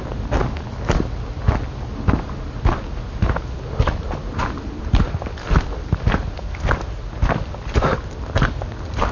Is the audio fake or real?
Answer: real